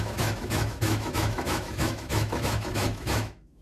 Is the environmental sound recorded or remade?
remade